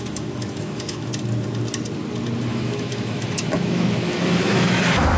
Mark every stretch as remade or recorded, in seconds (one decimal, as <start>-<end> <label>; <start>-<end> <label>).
0.0-1.1 remade; 1.1-2.5 recorded; 2.5-5.2 remade